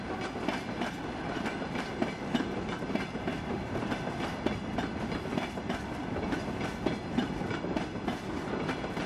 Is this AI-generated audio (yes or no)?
no